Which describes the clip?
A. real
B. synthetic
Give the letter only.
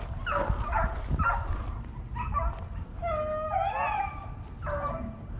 A